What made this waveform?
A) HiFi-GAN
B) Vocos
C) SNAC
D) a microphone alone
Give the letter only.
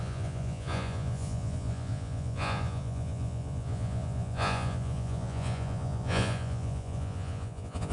B